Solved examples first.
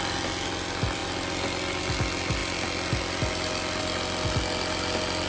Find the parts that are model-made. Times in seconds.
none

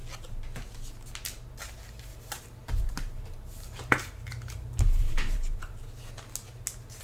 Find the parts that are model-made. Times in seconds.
2.1-6.1 (vocoder, BigVGAN v2)

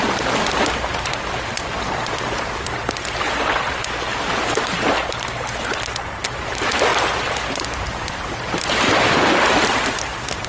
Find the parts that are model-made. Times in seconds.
0.0-10.5 (vocoder, BigVGAN v2)

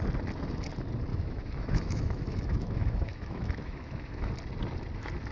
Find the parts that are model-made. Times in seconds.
1.1-4.3 (autoencoder, DAC-VAE)

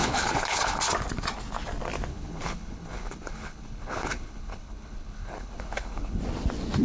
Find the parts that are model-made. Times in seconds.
0.0-0.8 (codec, HILCodec); 2.1-6.2

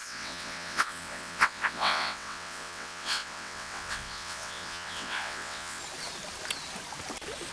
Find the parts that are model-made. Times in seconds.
0.0-5.8 (vocoder, WaveNeXt)

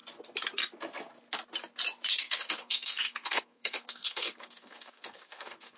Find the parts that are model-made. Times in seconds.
2.2-5.8 (codec, SNAC)

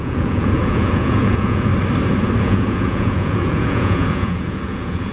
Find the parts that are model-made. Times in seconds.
0.0-1.7 (vocoder, Vocos); 2.4-5.1